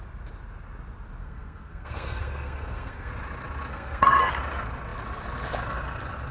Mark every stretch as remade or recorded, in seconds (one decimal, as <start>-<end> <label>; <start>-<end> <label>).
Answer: 0.0-1.2 recorded; 1.2-3.1 remade; 3.1-3.7 recorded; 3.7-4.2 remade; 4.2-6.3 recorded